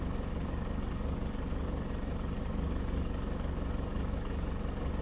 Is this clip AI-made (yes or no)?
yes